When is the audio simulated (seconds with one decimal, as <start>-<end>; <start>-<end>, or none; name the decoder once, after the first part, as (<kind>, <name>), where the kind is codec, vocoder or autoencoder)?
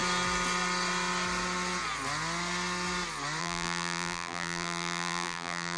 3.4-5.8 (vocoder, BigVGAN v2)